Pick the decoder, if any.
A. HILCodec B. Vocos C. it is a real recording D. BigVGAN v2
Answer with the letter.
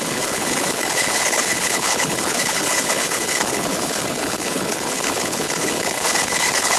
A